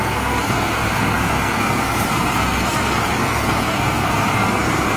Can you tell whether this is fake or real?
fake